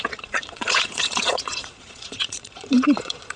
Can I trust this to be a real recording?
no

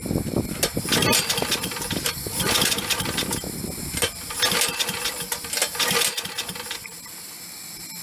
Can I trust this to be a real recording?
yes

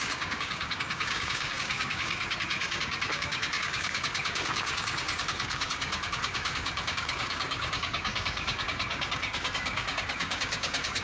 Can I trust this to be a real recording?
no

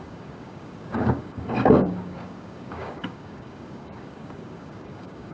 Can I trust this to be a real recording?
no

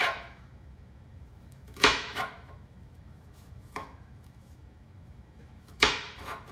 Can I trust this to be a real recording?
no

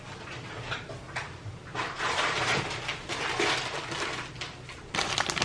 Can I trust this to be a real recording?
yes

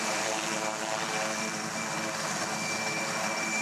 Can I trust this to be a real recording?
no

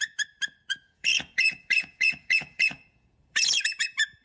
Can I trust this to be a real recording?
no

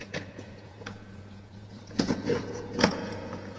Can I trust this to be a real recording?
no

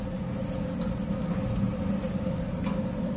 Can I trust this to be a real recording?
yes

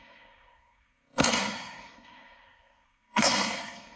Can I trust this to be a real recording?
no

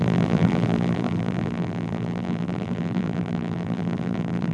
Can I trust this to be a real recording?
no